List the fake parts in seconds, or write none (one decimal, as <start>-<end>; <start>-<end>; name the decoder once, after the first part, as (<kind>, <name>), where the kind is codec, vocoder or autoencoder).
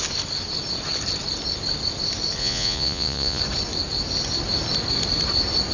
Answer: 2.4-3.4 (vocoder, Vocos)